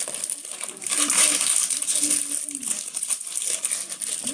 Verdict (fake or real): real